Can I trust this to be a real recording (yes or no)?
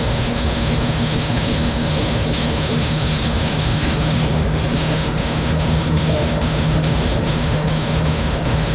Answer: no